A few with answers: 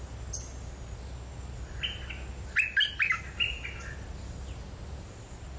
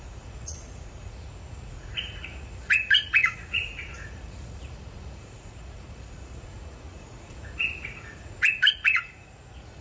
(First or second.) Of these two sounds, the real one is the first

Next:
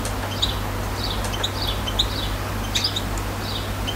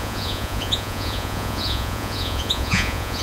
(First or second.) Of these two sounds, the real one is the first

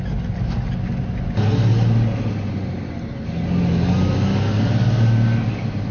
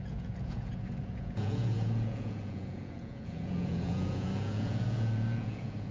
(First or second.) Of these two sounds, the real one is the first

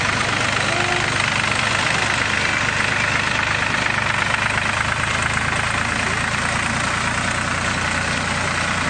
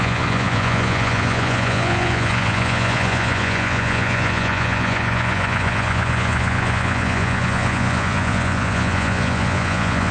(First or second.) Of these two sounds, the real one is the first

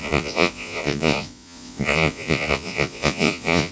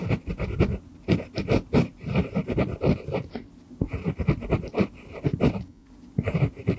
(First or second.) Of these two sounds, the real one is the second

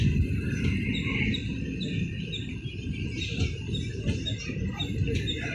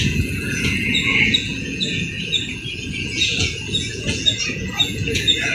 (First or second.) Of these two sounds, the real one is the first